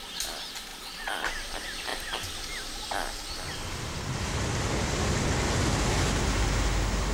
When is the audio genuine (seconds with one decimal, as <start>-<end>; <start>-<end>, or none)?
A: 0.0-7.1